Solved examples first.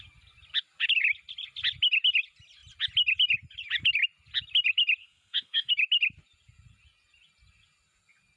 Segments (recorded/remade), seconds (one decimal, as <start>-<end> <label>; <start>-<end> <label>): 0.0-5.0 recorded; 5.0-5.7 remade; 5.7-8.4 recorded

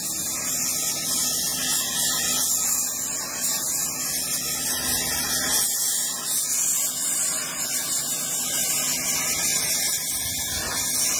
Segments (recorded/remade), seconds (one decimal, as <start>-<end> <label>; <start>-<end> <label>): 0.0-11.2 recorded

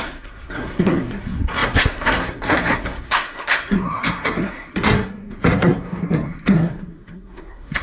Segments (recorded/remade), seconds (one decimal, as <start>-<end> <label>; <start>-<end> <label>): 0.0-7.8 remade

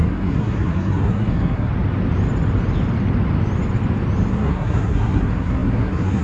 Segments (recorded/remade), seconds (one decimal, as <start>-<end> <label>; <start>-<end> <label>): 0.0-1.7 remade; 1.7-4.3 recorded; 4.3-6.2 remade

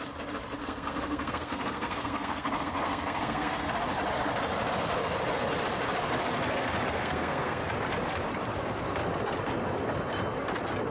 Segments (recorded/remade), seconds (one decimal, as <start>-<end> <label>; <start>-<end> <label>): 0.0-0.6 recorded; 0.6-3.7 remade; 3.7-7.0 recorded; 7.0-7.6 remade; 7.6-10.9 recorded

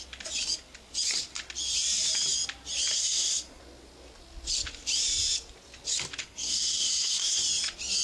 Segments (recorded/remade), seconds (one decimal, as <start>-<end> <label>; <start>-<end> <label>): 0.0-2.9 recorded; 2.9-3.6 remade; 3.6-6.2 recorded; 6.2-7.4 remade; 7.4-8.0 recorded

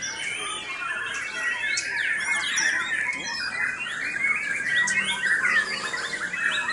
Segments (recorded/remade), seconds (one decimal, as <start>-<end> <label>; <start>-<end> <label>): 0.0-6.7 recorded